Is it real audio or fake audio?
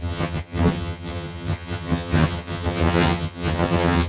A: fake